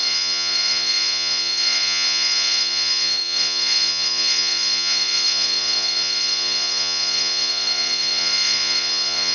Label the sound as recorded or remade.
remade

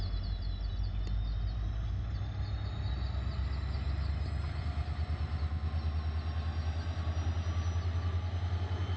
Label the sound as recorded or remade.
recorded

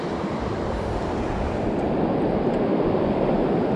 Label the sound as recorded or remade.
recorded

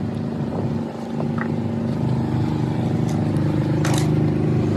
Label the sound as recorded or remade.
recorded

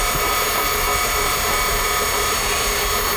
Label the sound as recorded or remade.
recorded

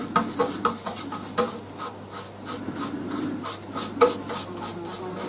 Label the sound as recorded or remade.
recorded